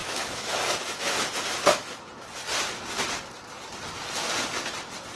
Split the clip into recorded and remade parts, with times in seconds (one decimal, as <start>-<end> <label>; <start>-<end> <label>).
0.0-2.3 remade; 2.3-5.2 recorded